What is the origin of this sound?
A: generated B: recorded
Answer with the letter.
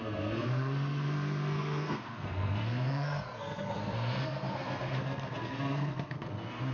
A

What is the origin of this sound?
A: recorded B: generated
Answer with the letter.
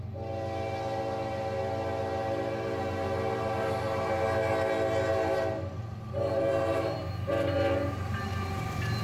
A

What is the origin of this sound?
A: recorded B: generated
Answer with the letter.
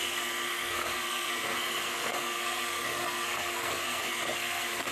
B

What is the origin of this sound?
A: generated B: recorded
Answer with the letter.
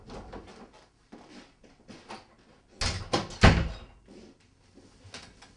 B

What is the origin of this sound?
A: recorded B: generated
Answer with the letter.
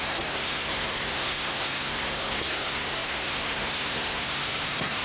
B